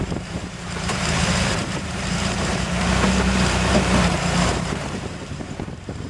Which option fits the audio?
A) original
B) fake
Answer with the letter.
B